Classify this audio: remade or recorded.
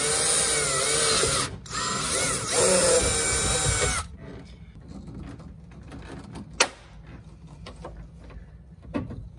recorded